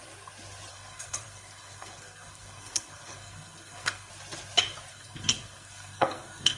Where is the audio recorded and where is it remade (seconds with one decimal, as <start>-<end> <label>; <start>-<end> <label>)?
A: 0.0-0.7 recorded; 0.7-4.1 remade; 4.1-4.9 recorded; 4.9-6.6 remade